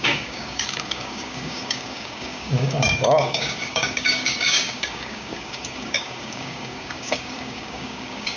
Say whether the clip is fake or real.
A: fake